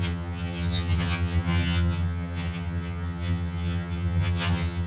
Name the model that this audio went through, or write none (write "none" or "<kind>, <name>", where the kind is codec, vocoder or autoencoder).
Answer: vocoder, HiFi-GAN